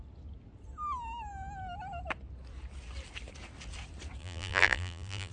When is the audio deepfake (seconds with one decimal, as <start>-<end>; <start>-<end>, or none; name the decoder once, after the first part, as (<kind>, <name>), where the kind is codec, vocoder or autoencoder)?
4.2-5.3 (vocoder, BigVGAN v2)